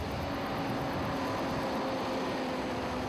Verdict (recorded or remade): recorded